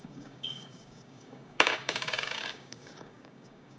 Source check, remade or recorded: remade